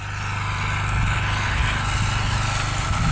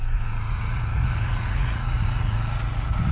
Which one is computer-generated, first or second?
second